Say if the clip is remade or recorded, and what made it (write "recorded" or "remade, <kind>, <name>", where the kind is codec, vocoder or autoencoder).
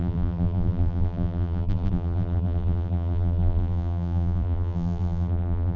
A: remade, vocoder, BigVGAN v2